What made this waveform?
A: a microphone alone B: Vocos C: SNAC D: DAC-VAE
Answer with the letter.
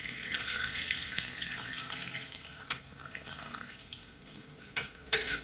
C